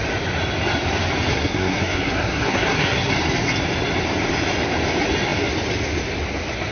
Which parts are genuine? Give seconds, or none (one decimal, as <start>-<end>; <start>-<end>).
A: 0.0-1.3; 3.1-6.7